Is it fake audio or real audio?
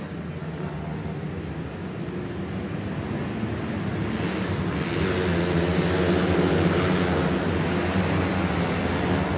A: real